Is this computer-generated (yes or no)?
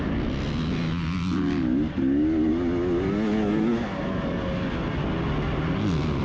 no